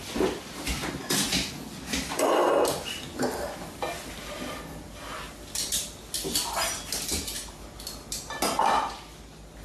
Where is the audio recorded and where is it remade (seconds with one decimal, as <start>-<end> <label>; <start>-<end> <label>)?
0.0-9.6 recorded